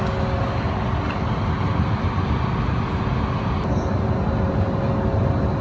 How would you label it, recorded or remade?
recorded